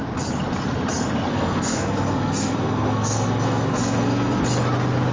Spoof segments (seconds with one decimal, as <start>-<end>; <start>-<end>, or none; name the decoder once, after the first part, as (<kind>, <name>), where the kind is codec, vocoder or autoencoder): 1.3-4.4 (codec, SNAC)